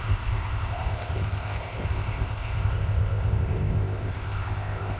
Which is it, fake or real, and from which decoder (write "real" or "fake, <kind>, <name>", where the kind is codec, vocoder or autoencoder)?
fake, codec, ZipCodec